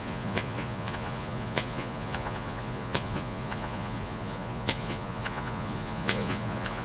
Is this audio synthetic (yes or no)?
yes